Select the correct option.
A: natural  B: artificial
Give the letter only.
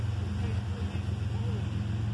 A